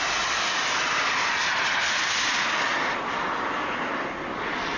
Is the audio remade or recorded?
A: recorded